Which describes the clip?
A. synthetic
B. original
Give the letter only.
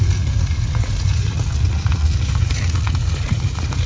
A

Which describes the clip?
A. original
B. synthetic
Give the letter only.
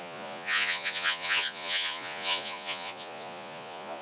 B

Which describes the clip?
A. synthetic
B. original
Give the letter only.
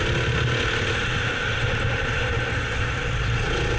B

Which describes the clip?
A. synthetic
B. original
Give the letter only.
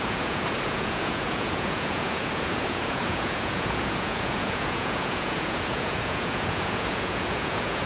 A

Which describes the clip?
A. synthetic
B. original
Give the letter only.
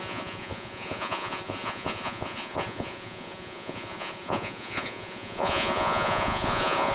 A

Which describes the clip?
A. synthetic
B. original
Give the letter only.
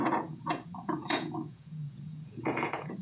A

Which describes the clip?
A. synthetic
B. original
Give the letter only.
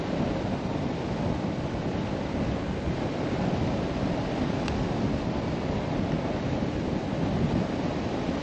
B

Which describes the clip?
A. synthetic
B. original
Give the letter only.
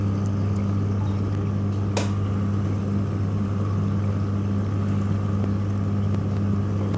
B